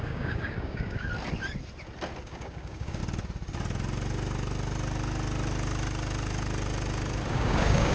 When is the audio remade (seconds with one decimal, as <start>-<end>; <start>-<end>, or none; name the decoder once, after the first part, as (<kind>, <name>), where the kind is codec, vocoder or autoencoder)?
0.0-1.1 (codec, DAC); 2.2-3.0; 7.3-7.9